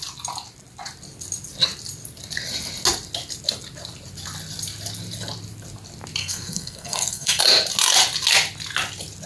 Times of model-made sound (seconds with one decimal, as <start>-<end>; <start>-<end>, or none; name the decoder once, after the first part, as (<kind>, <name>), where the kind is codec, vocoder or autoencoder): 6.2-7.4 (codec, SNAC)